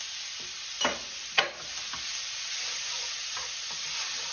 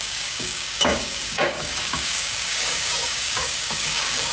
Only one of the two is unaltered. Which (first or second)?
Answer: first